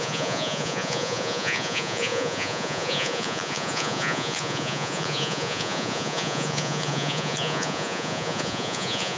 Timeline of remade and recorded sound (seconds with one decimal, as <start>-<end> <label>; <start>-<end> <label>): 0.0-9.2 remade